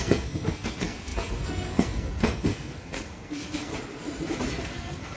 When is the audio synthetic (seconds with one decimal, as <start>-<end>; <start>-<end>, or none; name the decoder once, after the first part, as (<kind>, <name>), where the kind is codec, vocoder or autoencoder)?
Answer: 0.0-3.7 (codec, SNAC); 4.6-5.2